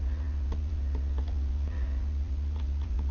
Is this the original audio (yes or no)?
no